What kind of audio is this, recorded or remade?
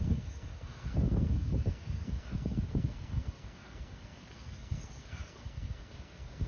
remade